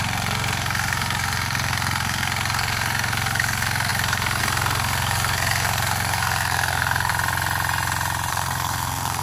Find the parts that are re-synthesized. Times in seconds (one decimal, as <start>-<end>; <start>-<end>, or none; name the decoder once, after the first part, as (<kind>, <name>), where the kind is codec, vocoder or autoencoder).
0.0-7.1 (codec, SNAC); 8.3-9.2